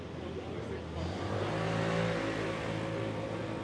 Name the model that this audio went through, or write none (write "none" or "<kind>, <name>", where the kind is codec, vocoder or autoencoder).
none